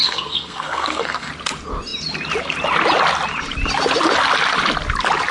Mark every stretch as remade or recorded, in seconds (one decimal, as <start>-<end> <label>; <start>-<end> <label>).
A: 0.0-1.3 remade; 1.3-5.3 recorded

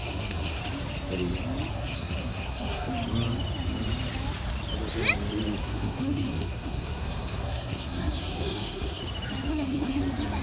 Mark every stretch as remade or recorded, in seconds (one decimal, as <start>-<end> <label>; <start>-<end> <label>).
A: 0.0-0.6 remade; 0.6-1.7 recorded; 1.7-2.9 remade; 2.9-5.6 recorded; 5.6-9.0 remade; 9.0-9.5 recorded; 9.5-10.0 remade; 10.0-10.4 recorded

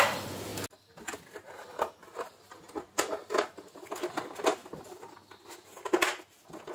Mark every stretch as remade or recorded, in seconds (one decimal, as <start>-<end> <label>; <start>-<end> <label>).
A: 0.0-6.7 recorded

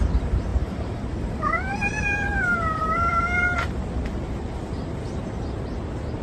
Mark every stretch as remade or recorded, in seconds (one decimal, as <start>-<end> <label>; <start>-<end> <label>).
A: 0.0-6.2 remade

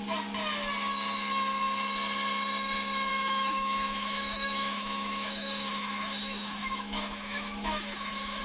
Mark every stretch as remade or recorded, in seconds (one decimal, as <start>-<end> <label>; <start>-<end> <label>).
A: 0.0-3.1 recorded; 3.1-8.4 remade

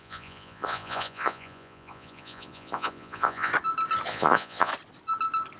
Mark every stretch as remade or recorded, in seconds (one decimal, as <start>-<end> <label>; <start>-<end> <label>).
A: 0.0-3.5 remade; 3.5-4.1 recorded; 4.1-4.7 remade; 4.7-5.6 recorded

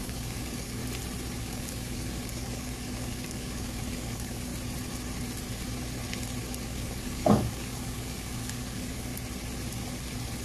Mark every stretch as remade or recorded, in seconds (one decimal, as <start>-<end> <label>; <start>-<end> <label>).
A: 0.0-0.8 remade; 0.8-1.4 recorded; 1.4-4.5 remade; 4.5-6.6 recorded; 6.6-9.1 remade; 9.1-10.4 recorded